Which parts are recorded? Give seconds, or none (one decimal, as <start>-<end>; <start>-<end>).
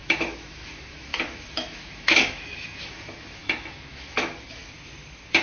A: 4.6-5.4